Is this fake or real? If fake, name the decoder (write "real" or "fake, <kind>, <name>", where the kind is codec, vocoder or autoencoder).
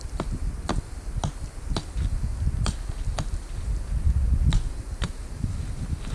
real